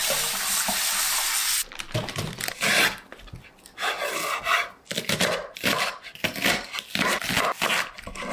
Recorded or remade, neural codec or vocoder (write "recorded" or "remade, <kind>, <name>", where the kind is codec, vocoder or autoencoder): recorded